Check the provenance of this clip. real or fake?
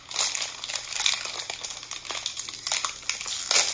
real